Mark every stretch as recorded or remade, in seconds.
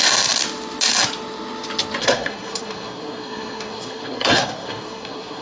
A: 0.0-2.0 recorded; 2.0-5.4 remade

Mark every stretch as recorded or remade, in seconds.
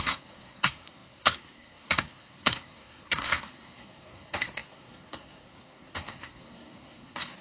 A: 0.0-7.4 remade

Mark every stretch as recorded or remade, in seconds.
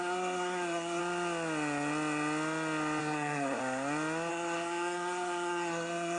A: 0.0-1.0 remade; 1.0-3.0 recorded; 3.0-3.6 remade; 3.6-4.3 recorded; 4.3-6.2 remade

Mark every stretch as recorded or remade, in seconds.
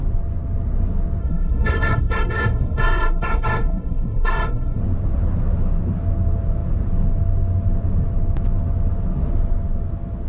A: 0.0-1.2 recorded; 1.2-4.8 remade; 4.8-10.3 recorded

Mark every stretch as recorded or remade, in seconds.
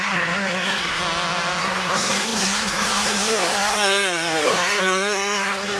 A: 0.0-1.0 remade; 1.0-1.6 recorded; 1.6-5.8 remade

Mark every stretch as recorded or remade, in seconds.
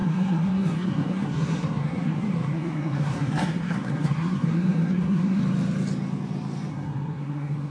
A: 0.0-5.4 remade; 5.4-6.7 recorded; 6.7-7.7 remade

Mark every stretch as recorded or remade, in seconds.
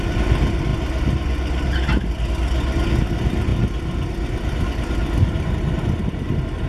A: 0.0-6.7 recorded